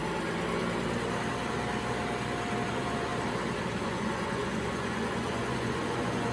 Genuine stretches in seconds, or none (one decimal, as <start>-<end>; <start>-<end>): 0.0-2.7; 3.1-3.8